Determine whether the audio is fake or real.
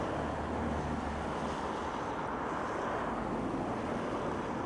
real